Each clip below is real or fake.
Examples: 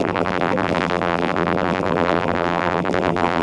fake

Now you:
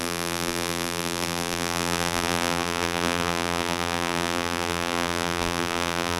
fake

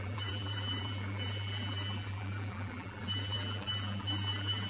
fake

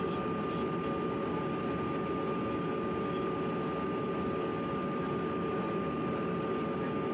real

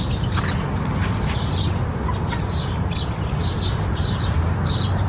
real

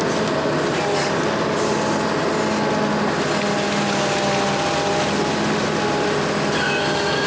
real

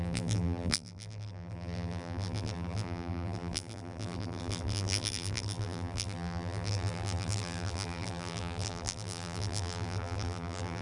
fake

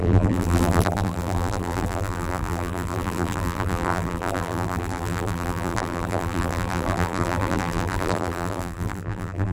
fake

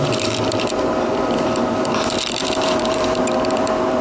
fake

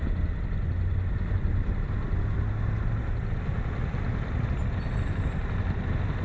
real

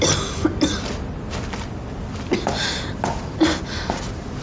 real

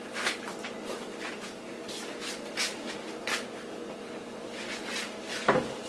real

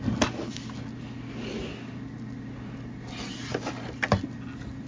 real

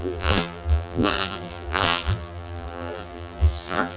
fake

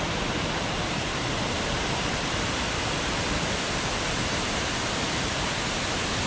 fake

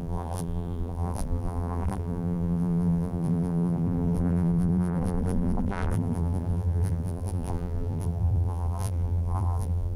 fake